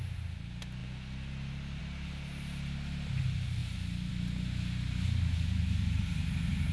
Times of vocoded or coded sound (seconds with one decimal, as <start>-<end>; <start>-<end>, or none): none